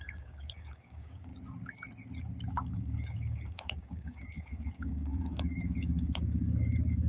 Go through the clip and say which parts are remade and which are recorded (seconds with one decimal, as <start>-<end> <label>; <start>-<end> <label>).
0.0-1.3 remade; 1.3-2.5 recorded; 2.5-7.1 remade

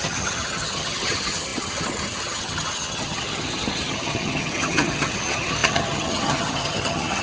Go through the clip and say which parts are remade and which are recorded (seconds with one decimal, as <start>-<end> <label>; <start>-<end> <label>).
0.0-7.2 remade

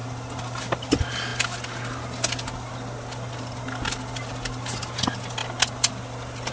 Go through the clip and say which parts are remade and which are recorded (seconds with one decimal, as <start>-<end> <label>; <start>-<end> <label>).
0.0-6.5 recorded

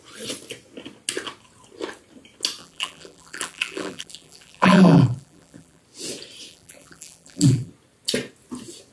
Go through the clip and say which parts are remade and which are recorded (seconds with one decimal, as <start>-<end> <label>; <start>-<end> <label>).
0.0-2.6 recorded; 2.6-5.8 remade; 5.8-6.5 recorded; 6.5-7.7 remade; 7.7-8.9 recorded

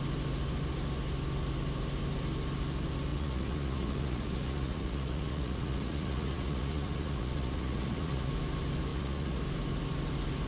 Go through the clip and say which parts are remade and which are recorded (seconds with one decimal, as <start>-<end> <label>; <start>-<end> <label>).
0.0-3.1 recorded; 3.1-8.3 remade; 8.3-8.9 recorded; 8.9-9.4 remade; 9.4-10.5 recorded

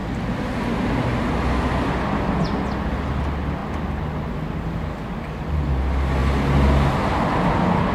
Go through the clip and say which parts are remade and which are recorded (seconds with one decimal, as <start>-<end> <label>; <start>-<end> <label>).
0.0-1.3 remade; 1.3-3.6 recorded; 3.6-4.8 remade; 4.8-7.9 recorded